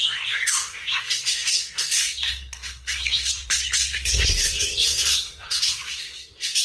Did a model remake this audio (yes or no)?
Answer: yes